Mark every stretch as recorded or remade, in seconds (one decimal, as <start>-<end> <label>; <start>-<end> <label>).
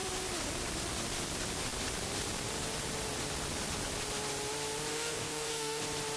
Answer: 0.0-4.9 recorded; 4.9-5.8 remade; 5.8-6.2 recorded